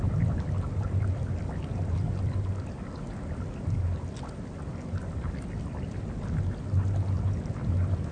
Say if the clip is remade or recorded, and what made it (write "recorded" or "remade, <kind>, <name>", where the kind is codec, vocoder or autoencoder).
recorded